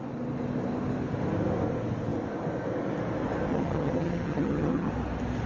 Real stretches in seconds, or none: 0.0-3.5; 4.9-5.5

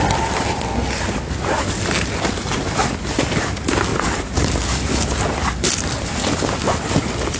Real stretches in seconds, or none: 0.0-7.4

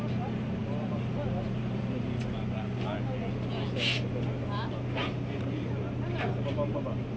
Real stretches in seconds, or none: 0.0-7.2

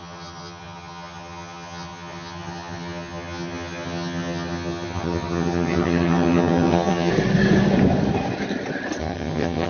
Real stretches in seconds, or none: 7.1-9.0